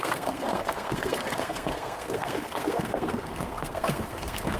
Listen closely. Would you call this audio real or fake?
fake